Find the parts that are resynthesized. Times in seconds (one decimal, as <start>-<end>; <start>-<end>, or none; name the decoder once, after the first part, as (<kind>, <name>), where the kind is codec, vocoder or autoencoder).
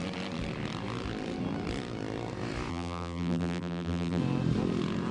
2.7-4.2 (vocoder, BigVGAN v2)